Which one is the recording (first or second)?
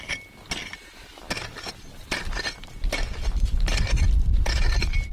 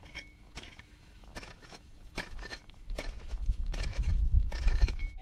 first